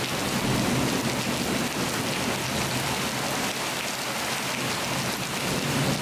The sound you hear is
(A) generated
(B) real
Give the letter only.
B